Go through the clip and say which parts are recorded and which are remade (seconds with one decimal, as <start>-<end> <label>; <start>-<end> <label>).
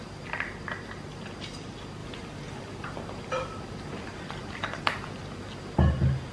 0.0-6.3 recorded